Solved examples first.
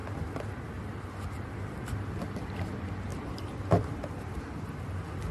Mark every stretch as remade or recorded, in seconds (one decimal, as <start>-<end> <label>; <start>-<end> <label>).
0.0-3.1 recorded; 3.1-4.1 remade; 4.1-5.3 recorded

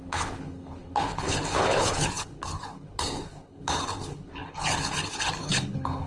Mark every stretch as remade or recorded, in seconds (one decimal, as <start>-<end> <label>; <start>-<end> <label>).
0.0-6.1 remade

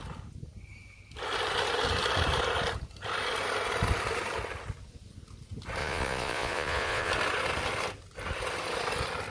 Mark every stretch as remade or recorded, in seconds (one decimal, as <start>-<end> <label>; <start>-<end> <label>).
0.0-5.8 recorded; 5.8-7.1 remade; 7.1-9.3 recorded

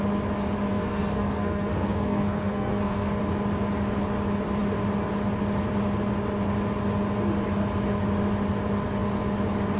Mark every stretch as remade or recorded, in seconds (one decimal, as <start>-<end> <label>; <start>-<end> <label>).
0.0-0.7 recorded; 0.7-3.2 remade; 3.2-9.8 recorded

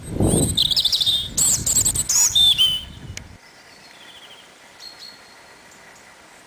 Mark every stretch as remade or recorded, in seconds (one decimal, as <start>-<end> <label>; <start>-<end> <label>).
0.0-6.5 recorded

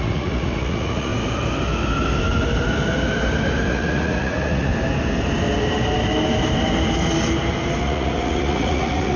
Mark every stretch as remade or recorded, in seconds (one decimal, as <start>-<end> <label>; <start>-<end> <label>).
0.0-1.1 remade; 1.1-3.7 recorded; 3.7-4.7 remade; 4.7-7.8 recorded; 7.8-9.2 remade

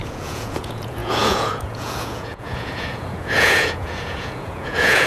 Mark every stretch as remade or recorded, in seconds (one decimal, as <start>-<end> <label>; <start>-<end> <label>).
0.0-5.1 remade